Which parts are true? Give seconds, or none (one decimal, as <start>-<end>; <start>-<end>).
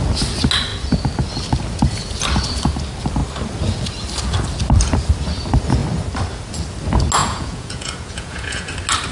0.0-7.2; 8.7-9.1